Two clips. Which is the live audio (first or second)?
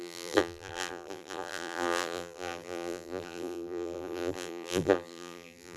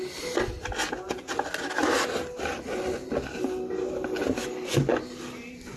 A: second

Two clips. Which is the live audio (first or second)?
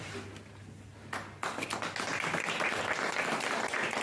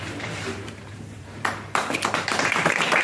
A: first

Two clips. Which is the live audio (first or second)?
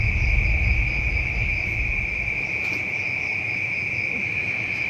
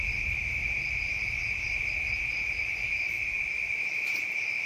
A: first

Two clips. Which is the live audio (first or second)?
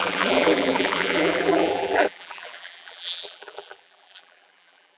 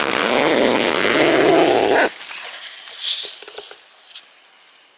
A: second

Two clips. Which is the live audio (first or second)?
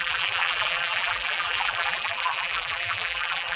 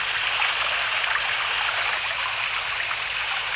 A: second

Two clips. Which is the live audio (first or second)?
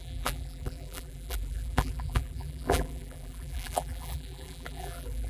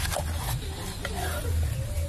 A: second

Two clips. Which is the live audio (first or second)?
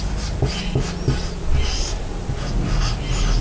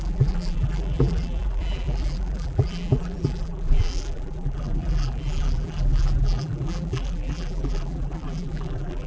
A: first